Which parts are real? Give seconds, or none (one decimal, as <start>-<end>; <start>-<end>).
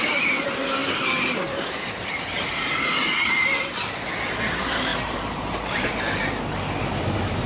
0.0-4.9; 6.3-7.5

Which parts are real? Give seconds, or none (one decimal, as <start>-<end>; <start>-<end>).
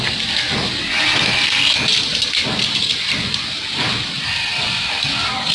0.0-2.1; 4.0-4.5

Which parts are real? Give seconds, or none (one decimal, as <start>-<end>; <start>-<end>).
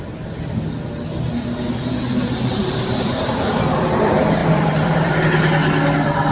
0.0-2.6; 3.5-4.4; 5.2-6.3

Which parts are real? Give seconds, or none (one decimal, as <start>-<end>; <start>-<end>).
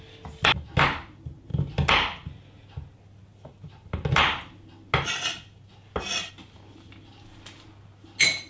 0.0-8.5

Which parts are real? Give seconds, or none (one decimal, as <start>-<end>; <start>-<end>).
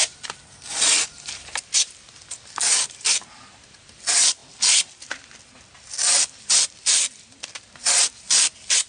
0.0-8.9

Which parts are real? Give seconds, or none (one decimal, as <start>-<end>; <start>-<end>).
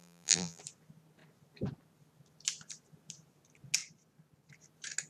0.6-5.1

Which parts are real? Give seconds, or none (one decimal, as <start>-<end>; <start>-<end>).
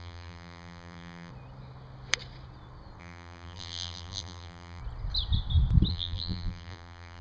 1.3-3.0; 4.8-5.9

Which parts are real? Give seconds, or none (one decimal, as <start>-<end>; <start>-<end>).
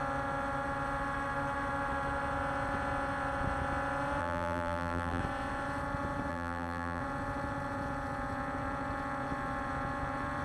0.0-4.2; 5.2-6.3; 7.0-10.4